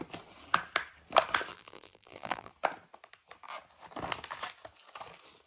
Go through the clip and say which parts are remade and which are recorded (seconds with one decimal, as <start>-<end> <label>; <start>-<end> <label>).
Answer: 0.0-1.5 recorded; 1.5-2.5 remade; 2.5-5.5 recorded